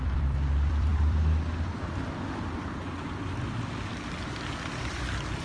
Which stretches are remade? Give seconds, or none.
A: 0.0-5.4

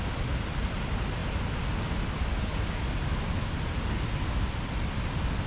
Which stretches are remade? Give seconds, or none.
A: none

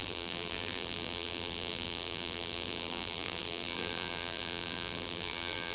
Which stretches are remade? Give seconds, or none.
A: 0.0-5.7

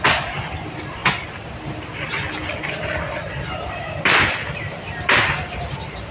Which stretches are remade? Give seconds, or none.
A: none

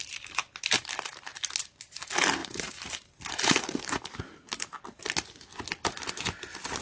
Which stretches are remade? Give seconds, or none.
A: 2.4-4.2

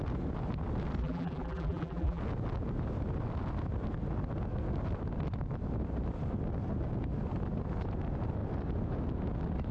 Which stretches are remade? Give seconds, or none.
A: 1.0-2.2